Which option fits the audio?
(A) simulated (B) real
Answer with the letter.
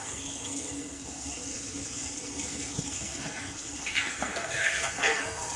A